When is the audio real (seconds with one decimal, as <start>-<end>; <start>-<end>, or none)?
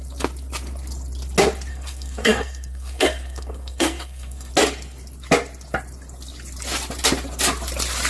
0.0-1.7; 4.5-8.1